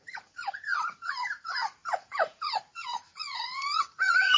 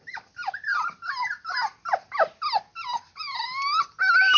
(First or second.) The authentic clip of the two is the second